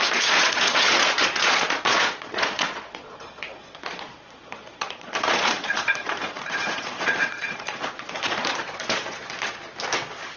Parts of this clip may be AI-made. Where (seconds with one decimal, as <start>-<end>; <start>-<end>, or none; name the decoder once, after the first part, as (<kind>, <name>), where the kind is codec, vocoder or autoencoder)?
0.0-9.7 (vocoder, Vocos)

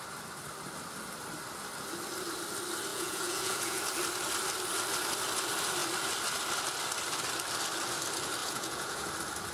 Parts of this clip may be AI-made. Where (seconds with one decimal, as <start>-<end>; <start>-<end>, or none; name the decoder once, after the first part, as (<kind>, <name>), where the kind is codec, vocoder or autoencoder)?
2.9-3.8 (vocoder, Vocos); 8.4-9.1

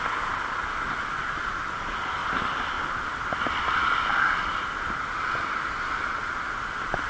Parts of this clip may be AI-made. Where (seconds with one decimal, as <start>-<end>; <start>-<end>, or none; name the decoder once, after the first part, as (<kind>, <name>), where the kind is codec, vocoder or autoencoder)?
none

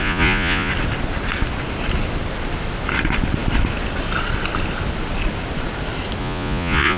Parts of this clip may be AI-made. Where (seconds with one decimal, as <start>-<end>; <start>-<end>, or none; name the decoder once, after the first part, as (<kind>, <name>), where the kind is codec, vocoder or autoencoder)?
0.0-0.7 (vocoder, Vocos); 6.2-7.0

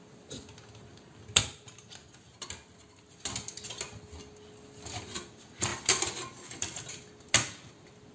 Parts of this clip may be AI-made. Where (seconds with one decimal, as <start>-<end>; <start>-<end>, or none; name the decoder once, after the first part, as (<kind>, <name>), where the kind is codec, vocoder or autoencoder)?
none

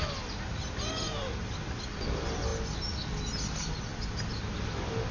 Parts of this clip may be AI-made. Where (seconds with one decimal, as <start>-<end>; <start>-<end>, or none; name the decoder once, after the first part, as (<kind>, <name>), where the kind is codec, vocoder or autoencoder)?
none

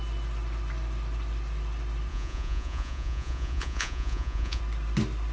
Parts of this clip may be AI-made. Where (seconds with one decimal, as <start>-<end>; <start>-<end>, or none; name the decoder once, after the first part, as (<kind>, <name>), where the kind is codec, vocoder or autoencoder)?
2.1-4.6 (vocoder, Vocos)

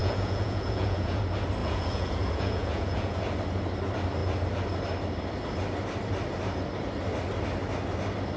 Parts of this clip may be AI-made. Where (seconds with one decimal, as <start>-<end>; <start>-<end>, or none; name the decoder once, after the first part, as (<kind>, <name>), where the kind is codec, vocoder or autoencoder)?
0.0-1.2 (vocoder, Vocos); 1.6-3.2